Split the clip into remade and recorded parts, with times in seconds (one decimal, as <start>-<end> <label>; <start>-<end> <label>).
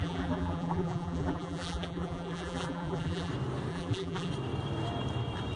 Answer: 0.0-3.3 remade; 3.3-3.7 recorded; 3.7-4.3 remade; 4.3-5.6 recorded